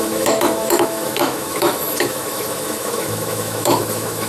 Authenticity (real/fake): fake